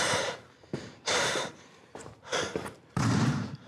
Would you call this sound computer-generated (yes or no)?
yes